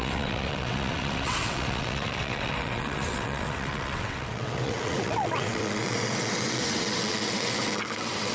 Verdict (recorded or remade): remade